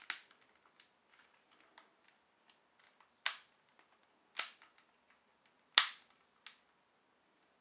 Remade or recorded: recorded